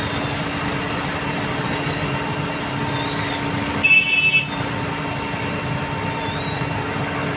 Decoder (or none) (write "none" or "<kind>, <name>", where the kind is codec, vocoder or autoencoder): none